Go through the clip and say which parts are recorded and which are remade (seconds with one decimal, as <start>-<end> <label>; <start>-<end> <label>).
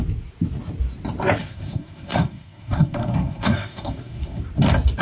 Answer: 0.0-1.4 recorded; 1.4-4.4 remade; 4.4-5.0 recorded